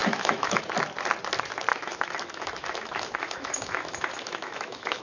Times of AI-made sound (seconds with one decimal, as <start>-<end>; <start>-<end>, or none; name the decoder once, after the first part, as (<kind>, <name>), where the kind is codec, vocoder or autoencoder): 0.0-0.6 (autoencoder, DAC-VAE); 1.7-5.0